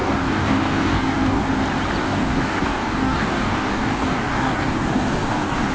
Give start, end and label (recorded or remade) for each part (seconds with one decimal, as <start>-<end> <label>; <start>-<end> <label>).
0.0-1.4 remade; 1.4-2.0 recorded; 2.0-5.7 remade

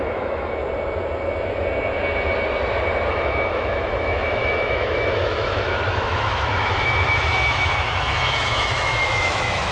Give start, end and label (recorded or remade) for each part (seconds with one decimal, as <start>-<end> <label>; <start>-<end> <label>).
0.0-0.6 remade; 0.6-3.1 recorded; 3.1-9.7 remade

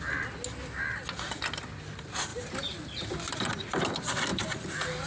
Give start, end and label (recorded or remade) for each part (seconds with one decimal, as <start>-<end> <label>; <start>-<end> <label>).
0.0-2.3 recorded; 2.3-3.4 remade; 3.4-4.3 recorded; 4.3-5.1 remade

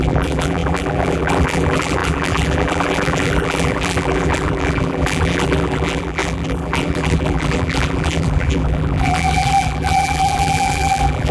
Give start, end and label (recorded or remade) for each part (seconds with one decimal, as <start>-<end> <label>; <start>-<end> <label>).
0.0-11.3 remade